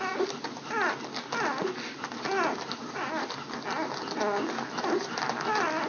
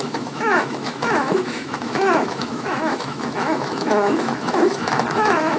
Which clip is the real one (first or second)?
first